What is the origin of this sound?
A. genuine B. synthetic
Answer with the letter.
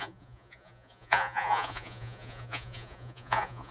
B